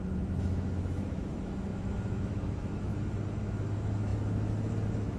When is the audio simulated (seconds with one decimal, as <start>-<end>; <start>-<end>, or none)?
0.0-2.9; 3.4-5.2